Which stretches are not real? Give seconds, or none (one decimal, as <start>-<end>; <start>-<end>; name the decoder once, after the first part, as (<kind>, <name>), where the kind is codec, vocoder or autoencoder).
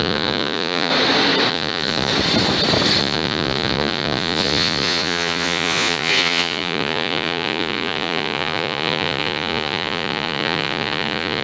0.0-0.9 (vocoder, Vocos); 1.5-2.1; 3.0-11.4